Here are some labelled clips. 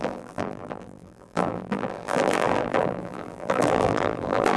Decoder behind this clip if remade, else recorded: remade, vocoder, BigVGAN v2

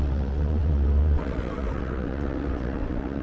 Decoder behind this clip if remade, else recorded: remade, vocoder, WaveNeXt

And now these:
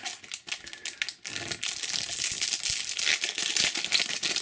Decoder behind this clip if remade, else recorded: recorded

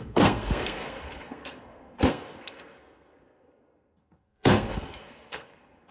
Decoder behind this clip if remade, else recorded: remade, codec, SNAC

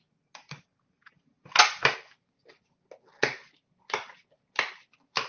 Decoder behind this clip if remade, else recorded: recorded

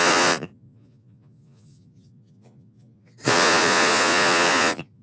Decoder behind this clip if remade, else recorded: remade, vocoder, Vocos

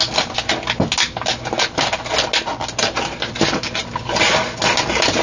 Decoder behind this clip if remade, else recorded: recorded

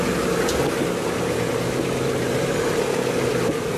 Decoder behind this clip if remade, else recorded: recorded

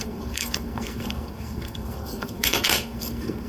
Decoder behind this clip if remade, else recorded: remade, codec, SNAC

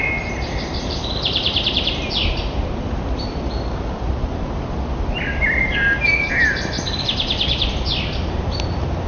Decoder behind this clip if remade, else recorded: recorded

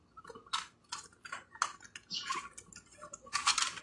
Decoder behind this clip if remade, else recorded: recorded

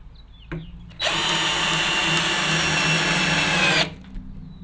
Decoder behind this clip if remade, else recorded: recorded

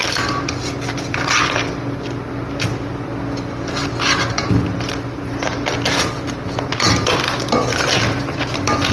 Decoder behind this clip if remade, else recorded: recorded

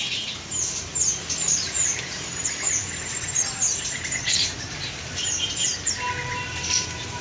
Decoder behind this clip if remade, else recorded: remade, vocoder, BigVGAN v2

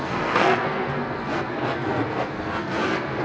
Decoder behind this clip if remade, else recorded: remade, codec, SNAC